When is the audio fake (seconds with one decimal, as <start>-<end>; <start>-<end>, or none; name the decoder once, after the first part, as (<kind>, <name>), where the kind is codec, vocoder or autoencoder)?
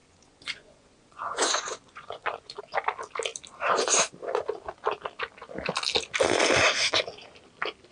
0.0-2.6 (vocoder, Vocos)